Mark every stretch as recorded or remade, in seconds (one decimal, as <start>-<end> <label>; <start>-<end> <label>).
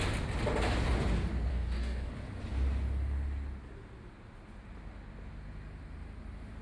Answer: 0.0-1.5 recorded; 1.5-2.1 remade; 2.1-6.6 recorded